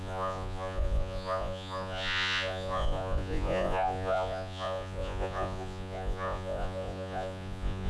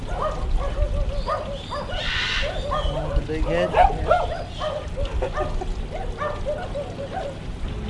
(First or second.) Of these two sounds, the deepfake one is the first